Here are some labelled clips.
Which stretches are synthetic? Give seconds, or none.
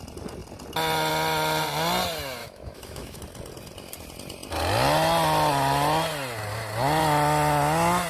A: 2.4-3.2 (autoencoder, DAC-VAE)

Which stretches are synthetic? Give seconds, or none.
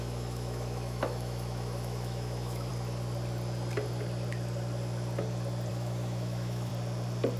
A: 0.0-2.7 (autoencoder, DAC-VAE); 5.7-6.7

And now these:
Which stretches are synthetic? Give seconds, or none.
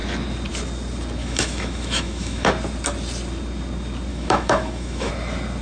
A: 1.2-2.5 (autoencoder, DAC-VAE); 4.1-5.1